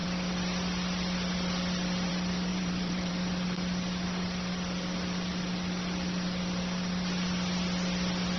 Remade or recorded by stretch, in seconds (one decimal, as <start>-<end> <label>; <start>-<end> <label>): 0.0-2.5 recorded; 2.5-3.1 remade; 3.1-8.4 recorded